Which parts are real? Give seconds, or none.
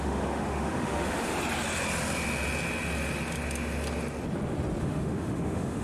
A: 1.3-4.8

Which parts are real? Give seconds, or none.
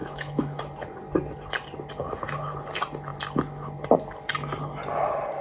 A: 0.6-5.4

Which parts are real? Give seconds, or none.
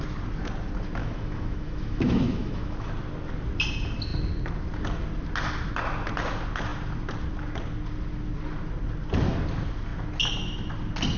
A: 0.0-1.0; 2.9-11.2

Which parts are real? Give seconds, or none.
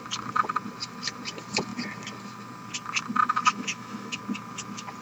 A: 0.0-3.3; 4.2-5.0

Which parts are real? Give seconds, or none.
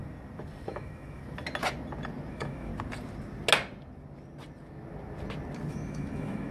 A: 0.0-0.7; 1.2-2.3; 2.7-5.7